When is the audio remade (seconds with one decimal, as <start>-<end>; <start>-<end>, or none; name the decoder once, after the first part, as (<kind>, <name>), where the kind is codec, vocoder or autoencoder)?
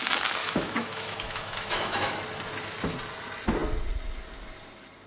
0.4-2.2 (autoencoder, DAC-VAE)